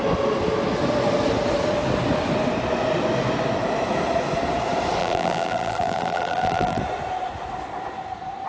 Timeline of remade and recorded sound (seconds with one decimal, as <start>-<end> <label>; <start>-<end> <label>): 0.0-5.0 recorded; 5.0-6.8 remade; 6.8-8.5 recorded